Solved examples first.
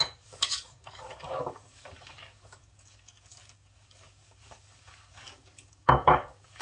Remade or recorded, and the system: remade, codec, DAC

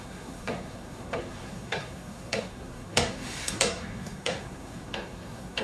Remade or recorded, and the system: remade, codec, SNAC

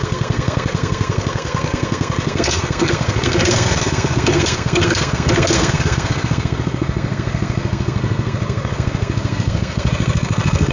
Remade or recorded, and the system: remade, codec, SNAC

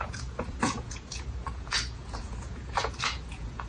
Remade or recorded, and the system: remade, vocoder, Vocos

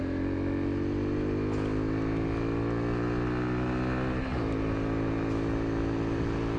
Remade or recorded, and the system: recorded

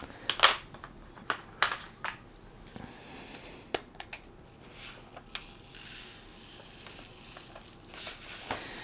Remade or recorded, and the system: recorded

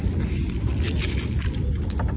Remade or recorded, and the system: recorded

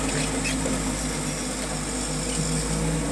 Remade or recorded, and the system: recorded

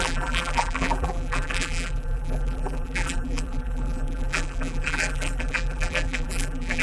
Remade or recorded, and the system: remade, vocoder, BigVGAN v2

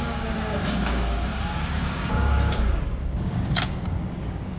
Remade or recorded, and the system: remade, codec, DAC